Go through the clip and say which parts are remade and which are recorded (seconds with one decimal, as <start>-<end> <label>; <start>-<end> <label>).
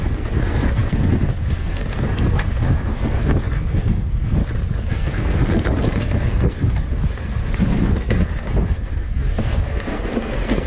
0.0-4.4 remade; 4.4-4.9 recorded; 4.9-10.7 remade